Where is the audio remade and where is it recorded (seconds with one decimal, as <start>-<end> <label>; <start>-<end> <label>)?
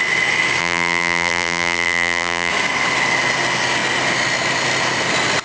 0.0-0.6 recorded; 0.6-2.5 remade; 2.5-5.4 recorded